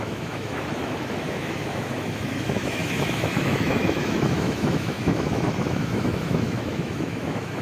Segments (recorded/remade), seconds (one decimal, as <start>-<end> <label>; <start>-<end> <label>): 0.0-7.6 remade